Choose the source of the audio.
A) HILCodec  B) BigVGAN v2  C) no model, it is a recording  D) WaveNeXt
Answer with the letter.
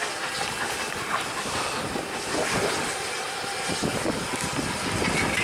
C